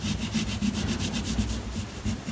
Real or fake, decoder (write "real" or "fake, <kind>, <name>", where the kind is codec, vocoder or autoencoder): real